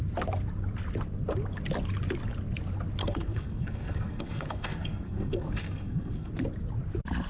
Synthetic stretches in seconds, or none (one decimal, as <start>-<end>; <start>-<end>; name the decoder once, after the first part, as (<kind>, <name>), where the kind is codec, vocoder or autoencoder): 3.0-6.3 (codec, SNAC)